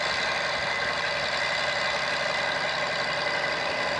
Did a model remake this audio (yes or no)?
no